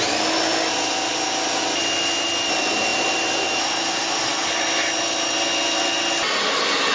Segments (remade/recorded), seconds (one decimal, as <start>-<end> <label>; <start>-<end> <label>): 0.0-6.9 recorded

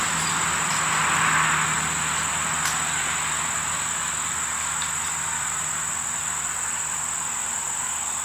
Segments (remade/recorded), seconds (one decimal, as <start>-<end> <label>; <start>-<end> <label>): 0.0-8.2 recorded

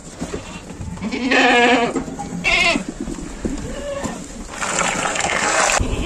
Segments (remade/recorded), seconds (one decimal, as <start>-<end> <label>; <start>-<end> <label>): 0.0-5.1 recorded; 5.1-5.6 remade; 5.6-6.1 recorded

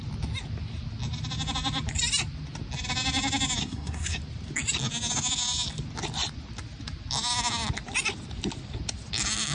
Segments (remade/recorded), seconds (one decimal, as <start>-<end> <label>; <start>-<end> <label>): 0.0-3.6 recorded; 3.6-4.2 remade; 4.2-9.5 recorded